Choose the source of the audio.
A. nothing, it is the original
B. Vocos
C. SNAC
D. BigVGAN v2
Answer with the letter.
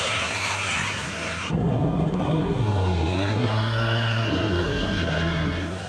C